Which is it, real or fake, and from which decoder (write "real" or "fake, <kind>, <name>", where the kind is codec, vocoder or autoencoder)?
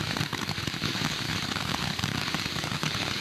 fake, codec, DAC